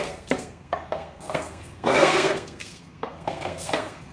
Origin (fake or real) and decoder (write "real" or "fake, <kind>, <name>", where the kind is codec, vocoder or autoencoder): fake, codec, SNAC